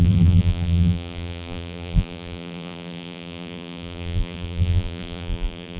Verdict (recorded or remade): remade